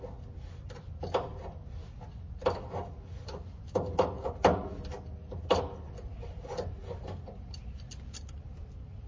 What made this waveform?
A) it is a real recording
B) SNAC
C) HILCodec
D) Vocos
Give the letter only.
A